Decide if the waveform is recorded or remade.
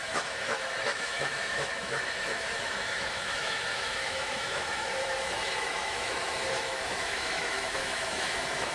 remade